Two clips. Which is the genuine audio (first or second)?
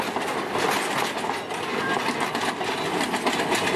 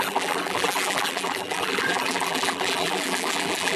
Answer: first